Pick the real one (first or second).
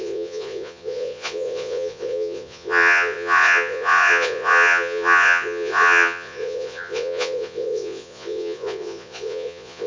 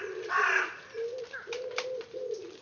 second